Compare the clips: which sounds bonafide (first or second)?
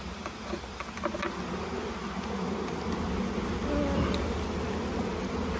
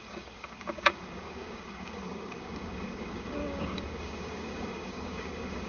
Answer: first